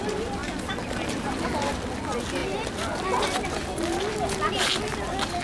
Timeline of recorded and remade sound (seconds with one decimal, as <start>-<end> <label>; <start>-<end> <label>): 0.0-5.4 recorded